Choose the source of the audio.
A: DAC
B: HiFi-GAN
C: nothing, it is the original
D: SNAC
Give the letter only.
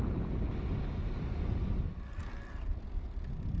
C